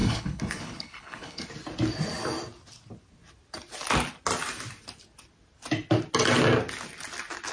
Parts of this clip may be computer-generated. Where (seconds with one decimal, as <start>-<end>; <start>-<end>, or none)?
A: 0.0-1.4